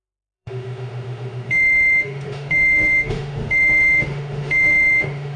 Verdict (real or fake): fake